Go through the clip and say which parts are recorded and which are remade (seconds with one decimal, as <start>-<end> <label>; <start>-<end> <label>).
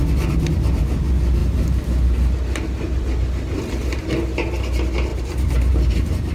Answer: 0.0-5.1 recorded; 5.1-6.3 remade